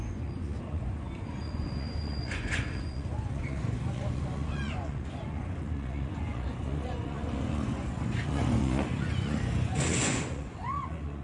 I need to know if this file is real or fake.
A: fake